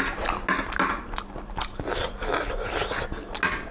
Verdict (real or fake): real